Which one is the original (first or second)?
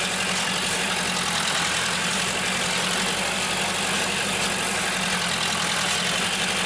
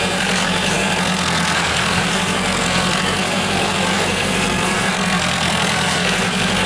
first